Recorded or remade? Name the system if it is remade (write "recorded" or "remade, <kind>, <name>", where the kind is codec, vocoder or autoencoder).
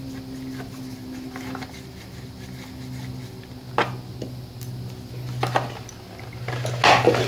recorded